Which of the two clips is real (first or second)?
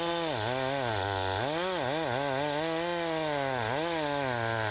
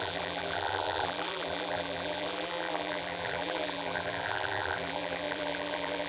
first